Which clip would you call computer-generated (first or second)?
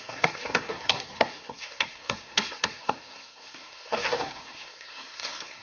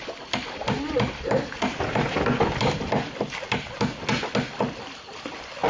first